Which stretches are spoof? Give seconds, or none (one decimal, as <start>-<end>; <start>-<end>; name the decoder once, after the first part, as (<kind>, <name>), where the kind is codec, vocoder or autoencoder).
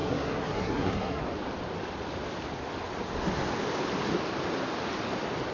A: 0.0-1.2 (codec, SNAC)